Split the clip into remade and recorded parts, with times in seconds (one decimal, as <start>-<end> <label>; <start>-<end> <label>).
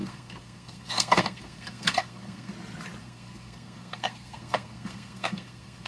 0.0-2.5 remade; 2.5-3.0 recorded; 3.0-5.9 remade